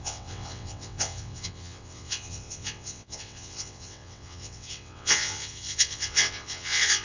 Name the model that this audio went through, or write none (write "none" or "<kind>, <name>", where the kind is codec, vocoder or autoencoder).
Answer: vocoder, WaveNeXt